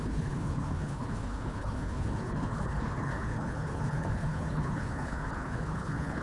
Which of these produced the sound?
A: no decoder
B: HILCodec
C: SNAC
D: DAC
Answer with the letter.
B